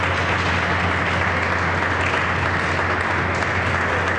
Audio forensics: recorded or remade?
recorded